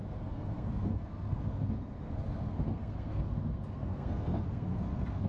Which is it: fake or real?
fake